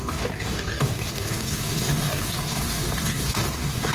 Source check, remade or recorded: remade